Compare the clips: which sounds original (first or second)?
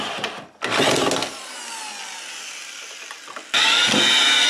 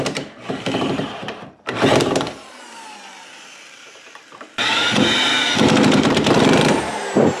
first